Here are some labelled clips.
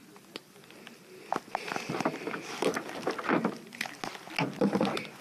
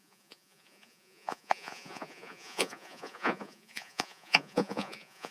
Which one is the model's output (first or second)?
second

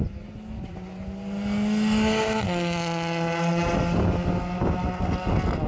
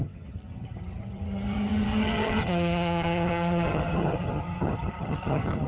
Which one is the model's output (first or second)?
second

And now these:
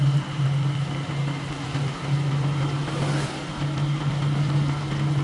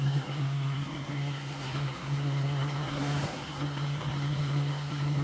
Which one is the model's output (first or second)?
second